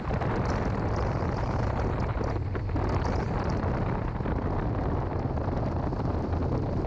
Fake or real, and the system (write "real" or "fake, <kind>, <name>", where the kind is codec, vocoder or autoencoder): real